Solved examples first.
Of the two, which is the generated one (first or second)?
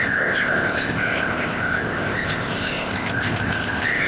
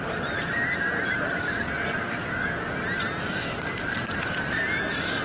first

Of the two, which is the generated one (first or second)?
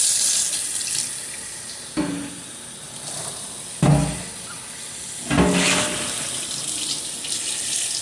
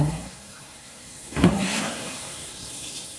second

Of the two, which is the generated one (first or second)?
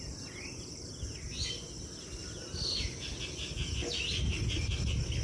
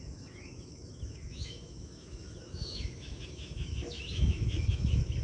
second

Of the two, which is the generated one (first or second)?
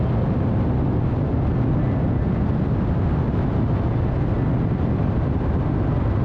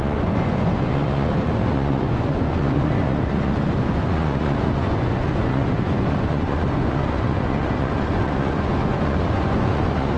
second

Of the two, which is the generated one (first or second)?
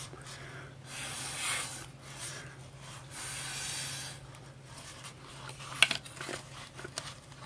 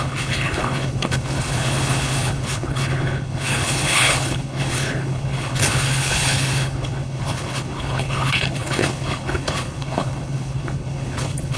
second